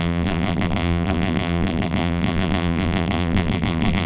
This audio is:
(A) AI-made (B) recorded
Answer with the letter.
A